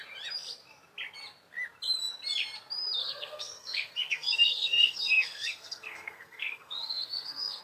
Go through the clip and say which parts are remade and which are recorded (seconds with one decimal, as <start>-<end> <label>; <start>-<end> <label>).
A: 0.0-3.0 recorded; 3.0-7.6 remade